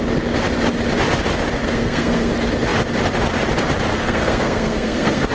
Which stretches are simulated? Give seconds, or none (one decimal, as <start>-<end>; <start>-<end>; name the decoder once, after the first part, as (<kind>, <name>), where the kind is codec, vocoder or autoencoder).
1.6-2.3 (codec, SNAC); 3.9-5.3

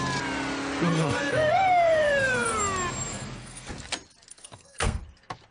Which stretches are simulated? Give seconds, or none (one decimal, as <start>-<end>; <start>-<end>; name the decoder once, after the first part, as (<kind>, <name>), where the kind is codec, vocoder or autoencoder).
0.9-2.6 (codec, SNAC); 3.1-3.7; 4.3-5.0

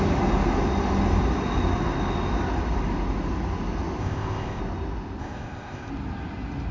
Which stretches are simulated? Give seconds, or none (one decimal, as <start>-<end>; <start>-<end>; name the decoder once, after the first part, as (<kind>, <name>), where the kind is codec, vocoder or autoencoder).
4.0-4.6 (codec, ZipCodec); 5.2-5.9

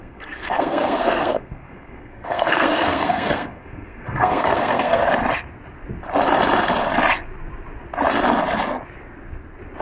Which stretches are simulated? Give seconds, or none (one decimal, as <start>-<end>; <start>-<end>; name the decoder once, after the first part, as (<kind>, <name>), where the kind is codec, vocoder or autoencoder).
0.0-5.0 (codec, SNAC)

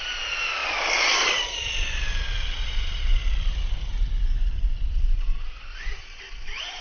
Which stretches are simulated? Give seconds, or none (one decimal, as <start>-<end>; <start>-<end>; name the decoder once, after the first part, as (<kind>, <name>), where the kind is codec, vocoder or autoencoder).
none

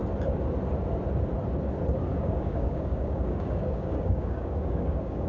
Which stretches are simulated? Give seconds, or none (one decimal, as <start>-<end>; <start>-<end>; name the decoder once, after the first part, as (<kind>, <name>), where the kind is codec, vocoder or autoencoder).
2.1-5.3 (codec, DAC)

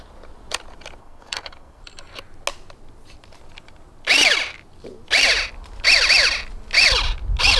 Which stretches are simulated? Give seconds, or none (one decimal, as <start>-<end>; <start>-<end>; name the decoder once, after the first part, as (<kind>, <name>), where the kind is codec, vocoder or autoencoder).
1.0-1.8 (codec, SNAC)

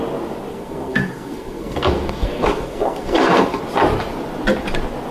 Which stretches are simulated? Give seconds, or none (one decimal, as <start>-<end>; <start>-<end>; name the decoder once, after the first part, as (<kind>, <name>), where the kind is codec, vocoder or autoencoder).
0.5-3.6 (codec, SNAC)